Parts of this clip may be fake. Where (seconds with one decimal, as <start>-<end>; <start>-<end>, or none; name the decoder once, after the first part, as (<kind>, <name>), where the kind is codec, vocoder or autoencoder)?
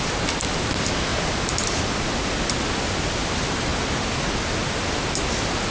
none